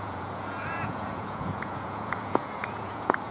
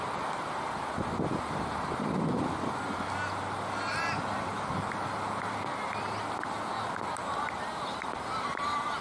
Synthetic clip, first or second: first